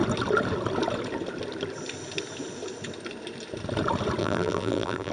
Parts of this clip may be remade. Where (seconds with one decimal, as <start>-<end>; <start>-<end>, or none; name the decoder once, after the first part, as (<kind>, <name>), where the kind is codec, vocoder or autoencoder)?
4.2-5.1 (vocoder, BigVGAN v2)